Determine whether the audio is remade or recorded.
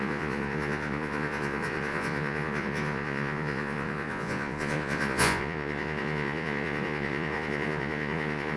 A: remade